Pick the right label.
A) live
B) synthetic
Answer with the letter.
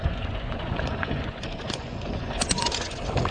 B